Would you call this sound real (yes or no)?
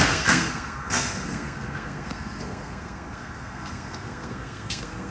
no